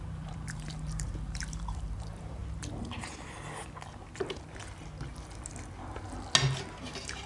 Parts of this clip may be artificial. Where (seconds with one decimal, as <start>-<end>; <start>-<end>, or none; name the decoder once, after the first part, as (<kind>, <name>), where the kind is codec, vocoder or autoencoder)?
0.0-2.4 (vocoder, BigVGAN v2); 6.8-7.3